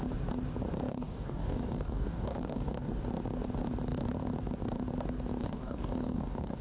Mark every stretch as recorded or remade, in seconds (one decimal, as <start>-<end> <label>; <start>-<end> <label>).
0.0-0.9 recorded; 0.9-2.9 remade; 2.9-5.4 recorded; 5.4-6.6 remade